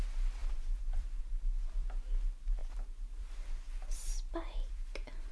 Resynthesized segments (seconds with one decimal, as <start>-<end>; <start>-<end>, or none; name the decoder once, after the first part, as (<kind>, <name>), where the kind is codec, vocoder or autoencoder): 0.4-1.2 (vocoder, BigVGAN v2); 2.6-5.3